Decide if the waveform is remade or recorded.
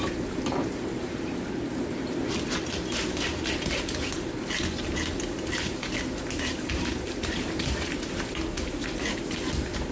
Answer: recorded